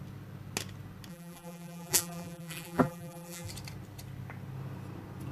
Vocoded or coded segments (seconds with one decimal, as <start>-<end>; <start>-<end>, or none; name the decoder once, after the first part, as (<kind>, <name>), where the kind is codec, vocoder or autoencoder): 1.1-3.5 (vocoder, BigVGAN v2)